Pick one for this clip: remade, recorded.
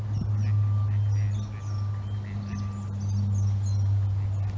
recorded